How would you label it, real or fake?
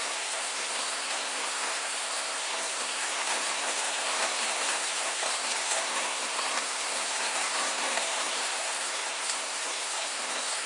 fake